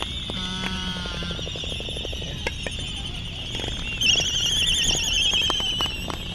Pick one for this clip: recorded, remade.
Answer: recorded